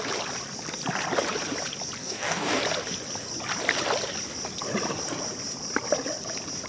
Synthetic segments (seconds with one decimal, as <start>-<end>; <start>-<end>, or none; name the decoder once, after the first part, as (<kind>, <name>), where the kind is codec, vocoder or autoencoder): 2.0-2.6 (codec, DAC)